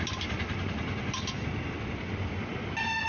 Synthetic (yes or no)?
no